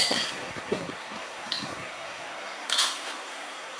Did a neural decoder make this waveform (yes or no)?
yes